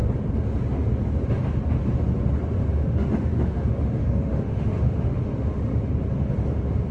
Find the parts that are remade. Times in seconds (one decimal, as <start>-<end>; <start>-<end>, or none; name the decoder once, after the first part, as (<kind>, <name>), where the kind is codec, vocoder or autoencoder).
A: 2.7-5.8 (autoencoder, DAC-VAE)